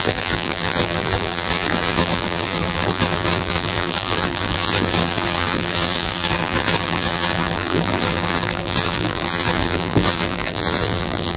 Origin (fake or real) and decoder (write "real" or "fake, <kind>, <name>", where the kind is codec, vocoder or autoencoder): fake, vocoder, BigVGAN v2